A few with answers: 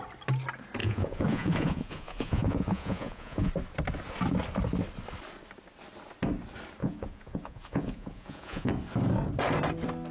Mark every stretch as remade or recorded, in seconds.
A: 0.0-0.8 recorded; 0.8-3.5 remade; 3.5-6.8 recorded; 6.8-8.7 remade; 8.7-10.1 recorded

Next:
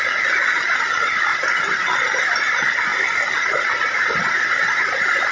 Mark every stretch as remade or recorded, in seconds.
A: 0.0-5.3 recorded

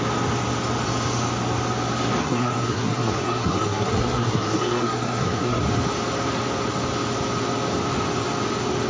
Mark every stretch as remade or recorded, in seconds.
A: 0.0-2.2 recorded; 2.2-5.6 remade; 5.6-8.9 recorded

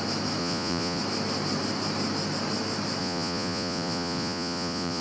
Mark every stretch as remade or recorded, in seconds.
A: 0.0-0.4 recorded; 0.4-1.0 remade; 1.0-3.0 recorded; 3.0-5.0 remade

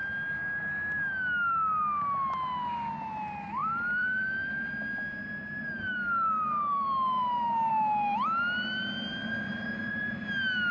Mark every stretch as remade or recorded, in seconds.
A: 0.0-3.6 recorded; 3.6-7.7 remade; 7.7-10.7 recorded